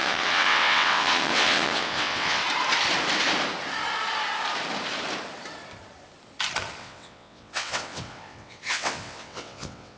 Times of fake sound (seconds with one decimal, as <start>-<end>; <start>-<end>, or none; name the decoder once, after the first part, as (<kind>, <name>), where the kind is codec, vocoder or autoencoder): 0.0-2.4 (vocoder, WaveNeXt); 6.8-10.0